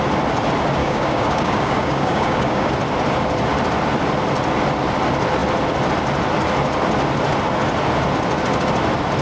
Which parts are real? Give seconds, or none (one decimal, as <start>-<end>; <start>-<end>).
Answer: 0.0-0.8; 2.7-9.2